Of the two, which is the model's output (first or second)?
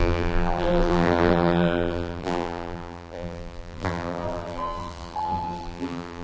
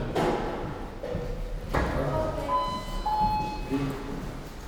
first